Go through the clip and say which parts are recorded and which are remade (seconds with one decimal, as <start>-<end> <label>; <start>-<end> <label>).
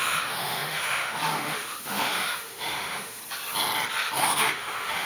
0.0-3.2 remade; 3.2-4.1 recorded; 4.1-5.1 remade